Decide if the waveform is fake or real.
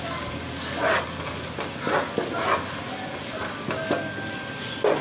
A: real